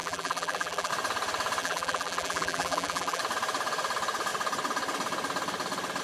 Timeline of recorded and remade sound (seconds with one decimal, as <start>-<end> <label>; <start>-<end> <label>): 0.0-0.9 remade; 0.9-1.6 recorded; 1.6-3.2 remade; 3.2-6.0 recorded